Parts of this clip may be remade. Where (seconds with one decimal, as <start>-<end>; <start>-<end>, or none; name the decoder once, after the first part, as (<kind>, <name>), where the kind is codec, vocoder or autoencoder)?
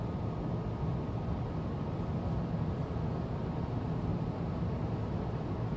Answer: 4.1-5.8 (vocoder, BigVGAN v2)